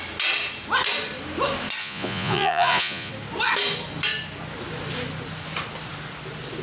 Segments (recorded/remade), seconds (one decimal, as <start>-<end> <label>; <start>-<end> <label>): 0.0-1.8 recorded; 1.8-3.1 remade; 3.1-6.6 recorded